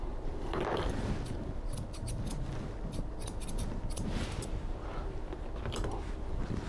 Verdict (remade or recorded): remade